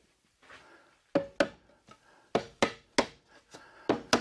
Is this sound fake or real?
real